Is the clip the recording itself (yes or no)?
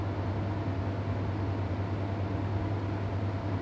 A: yes